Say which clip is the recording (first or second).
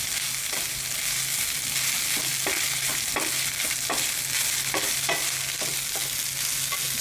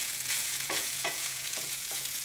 first